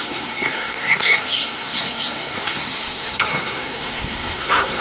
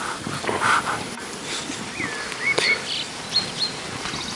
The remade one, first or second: first